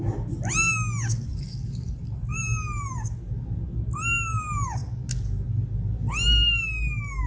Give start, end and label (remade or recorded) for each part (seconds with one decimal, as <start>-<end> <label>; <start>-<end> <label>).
0.0-1.3 recorded; 1.3-2.0 remade; 2.0-7.3 recorded